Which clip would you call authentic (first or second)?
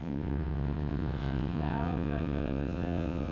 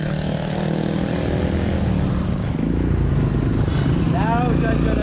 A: second